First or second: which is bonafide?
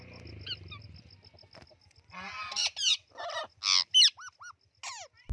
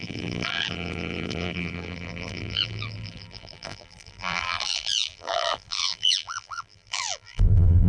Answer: first